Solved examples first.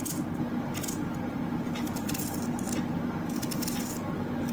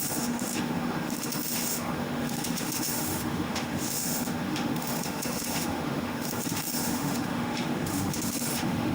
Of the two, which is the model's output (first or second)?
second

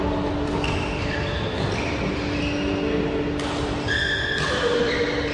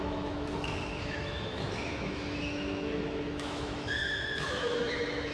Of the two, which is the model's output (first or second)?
second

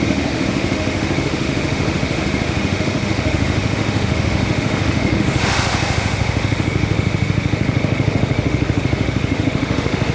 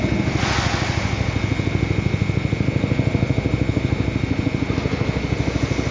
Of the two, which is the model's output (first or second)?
first